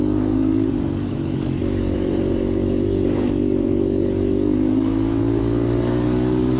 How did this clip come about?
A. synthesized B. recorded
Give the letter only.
A